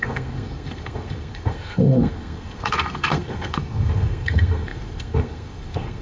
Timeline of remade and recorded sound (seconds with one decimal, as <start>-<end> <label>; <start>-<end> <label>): 0.0-6.0 remade

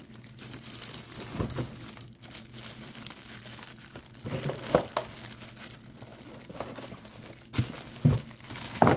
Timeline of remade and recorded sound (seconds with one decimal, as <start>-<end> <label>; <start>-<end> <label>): 0.0-6.1 recorded; 6.1-8.6 remade; 8.6-9.0 recorded

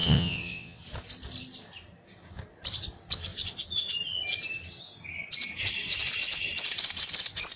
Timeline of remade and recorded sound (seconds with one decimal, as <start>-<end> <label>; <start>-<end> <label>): 0.0-0.8 remade; 0.8-7.6 recorded

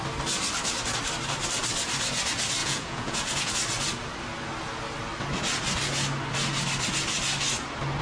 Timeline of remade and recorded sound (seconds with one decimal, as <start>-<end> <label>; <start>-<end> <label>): 0.0-2.6 recorded; 2.6-3.5 remade; 3.5-8.0 recorded